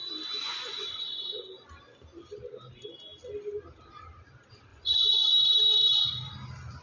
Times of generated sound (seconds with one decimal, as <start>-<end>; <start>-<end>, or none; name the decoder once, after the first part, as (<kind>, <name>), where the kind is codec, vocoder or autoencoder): 0.4-1.4 (vocoder, Vocos); 4.7-5.5

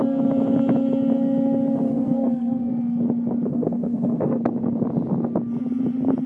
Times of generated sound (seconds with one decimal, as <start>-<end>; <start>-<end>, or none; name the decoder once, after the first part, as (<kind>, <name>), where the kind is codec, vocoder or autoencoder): 1.9-2.7 (codec, SNAC); 3.5-4.4

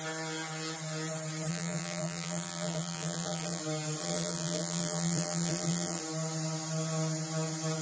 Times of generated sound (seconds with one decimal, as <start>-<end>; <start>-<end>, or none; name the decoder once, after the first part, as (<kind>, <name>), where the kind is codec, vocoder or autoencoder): 1.5-3.6 (vocoder, BigVGAN v2); 4.0-6.0

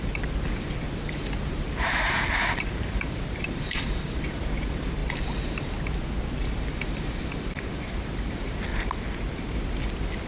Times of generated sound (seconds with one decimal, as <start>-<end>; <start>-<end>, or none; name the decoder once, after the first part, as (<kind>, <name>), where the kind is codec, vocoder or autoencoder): 0.0-5.0 (vocoder, BigVGAN v2); 7.4-8.7